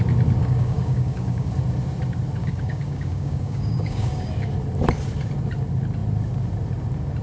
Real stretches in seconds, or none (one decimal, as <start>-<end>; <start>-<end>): 0.0-0.4; 1.5-2.4; 4.3-7.2